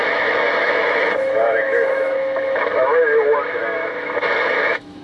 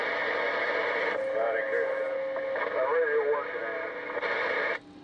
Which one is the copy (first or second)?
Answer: first